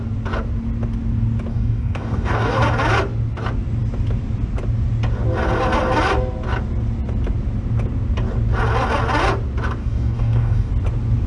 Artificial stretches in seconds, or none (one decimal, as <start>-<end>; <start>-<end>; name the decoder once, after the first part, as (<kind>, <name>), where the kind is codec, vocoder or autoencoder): 1.5-2.6 (codec, DAC); 9.8-10.7